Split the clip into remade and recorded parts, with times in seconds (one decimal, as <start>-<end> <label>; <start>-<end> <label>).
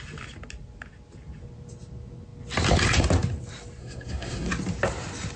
0.0-3.8 recorded; 3.8-4.5 remade; 4.5-5.4 recorded